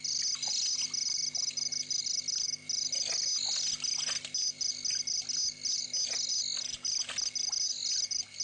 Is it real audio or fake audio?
real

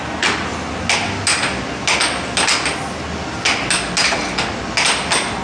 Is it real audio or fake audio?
real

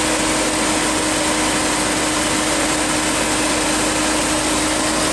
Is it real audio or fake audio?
real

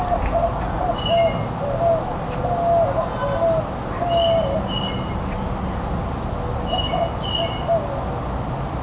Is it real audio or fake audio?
real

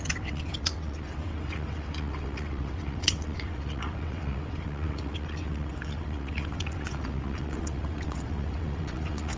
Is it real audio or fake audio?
fake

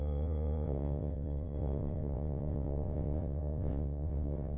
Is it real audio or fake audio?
fake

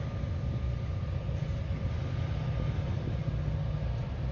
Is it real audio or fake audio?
real